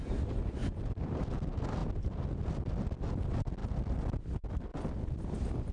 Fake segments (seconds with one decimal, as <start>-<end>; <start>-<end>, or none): 0.6-1.2; 1.8-2.3